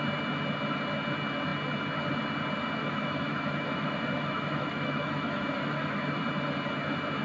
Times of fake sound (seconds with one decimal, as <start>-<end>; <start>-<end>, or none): 2.8-6.2